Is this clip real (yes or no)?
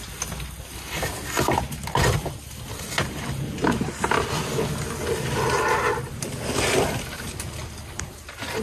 yes